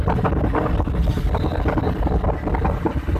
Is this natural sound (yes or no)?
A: yes